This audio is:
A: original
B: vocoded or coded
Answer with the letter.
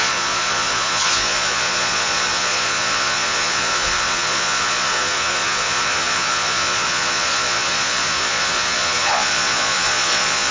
B